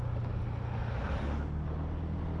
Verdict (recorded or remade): recorded